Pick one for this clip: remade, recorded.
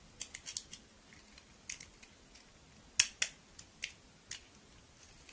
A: recorded